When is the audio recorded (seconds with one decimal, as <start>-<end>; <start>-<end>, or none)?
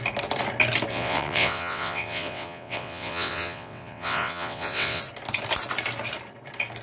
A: 0.0-0.9; 5.0-6.8